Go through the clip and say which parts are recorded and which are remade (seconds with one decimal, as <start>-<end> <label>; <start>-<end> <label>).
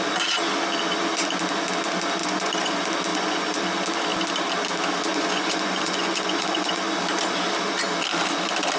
0.0-2.2 recorded; 2.2-2.7 remade; 2.7-3.1 recorded; 3.1-3.6 remade; 3.6-5.1 recorded; 5.1-6.8 remade; 6.8-8.8 recorded